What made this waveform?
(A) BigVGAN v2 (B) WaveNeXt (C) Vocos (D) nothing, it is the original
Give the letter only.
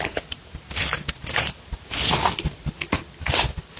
D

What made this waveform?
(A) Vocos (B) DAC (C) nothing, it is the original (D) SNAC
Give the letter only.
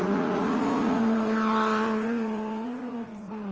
A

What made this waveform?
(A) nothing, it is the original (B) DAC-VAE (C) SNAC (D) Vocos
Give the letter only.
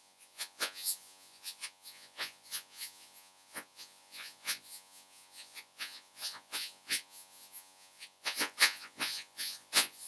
D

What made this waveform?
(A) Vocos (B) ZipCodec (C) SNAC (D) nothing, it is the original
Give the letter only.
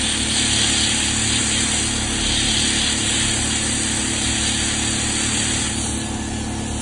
D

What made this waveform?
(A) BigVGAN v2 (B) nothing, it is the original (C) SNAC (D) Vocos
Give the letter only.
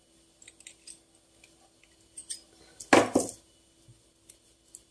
B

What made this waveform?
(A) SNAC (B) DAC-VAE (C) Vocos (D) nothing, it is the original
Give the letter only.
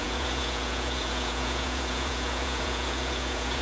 C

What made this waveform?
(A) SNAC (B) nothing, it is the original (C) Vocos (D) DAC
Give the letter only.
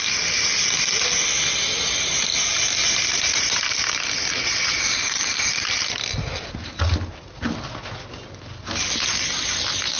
B